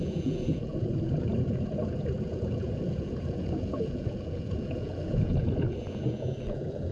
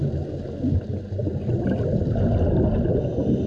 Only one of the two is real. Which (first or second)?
second